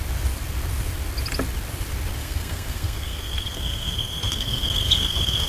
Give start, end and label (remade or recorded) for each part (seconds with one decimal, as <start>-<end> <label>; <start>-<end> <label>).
0.0-2.2 recorded; 2.2-5.5 remade